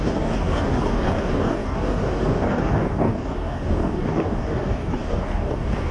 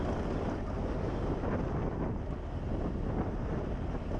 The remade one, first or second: first